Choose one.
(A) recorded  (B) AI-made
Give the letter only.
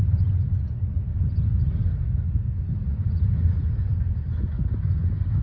A